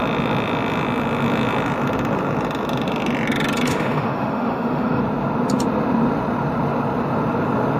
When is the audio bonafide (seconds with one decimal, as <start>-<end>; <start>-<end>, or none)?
0.0-3.7; 5.0-7.8